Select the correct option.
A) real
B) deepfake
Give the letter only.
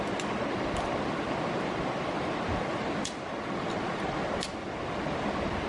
A